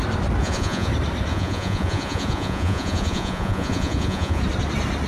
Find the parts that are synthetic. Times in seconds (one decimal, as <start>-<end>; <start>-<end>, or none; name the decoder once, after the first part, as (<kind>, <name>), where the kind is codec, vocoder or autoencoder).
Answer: 0.4-0.9 (vocoder, Vocos); 1.3-4.4